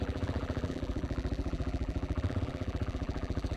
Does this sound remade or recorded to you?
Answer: remade